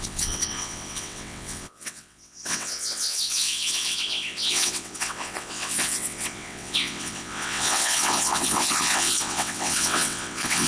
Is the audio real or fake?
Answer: fake